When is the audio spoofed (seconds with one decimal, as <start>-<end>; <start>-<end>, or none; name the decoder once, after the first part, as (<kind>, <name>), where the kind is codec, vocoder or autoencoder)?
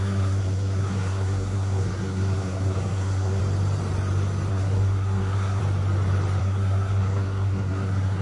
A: 0.0-3.4 (codec, SNAC); 4.5-5.6; 6.4-8.2